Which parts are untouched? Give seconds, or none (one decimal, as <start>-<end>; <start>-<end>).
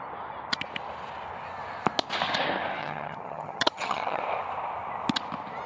0.0-2.8; 4.2-5.7